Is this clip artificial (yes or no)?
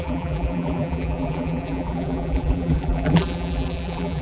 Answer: yes